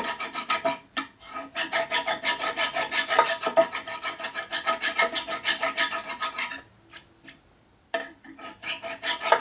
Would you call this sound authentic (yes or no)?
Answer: yes